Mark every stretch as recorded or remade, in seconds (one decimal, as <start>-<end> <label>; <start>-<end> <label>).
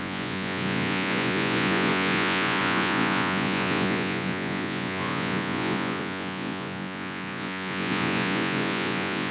0.0-9.3 remade